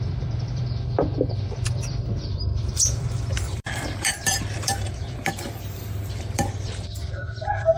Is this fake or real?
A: fake